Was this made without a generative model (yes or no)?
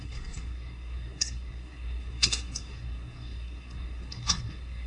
no